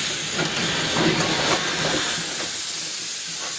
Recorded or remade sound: recorded